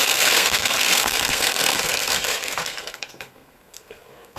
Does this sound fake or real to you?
fake